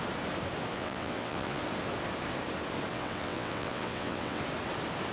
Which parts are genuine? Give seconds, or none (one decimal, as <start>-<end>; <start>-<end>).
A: 0.0-0.7; 1.6-2.9; 4.4-5.1